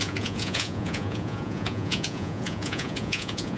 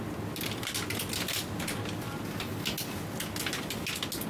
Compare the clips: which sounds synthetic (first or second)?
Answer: first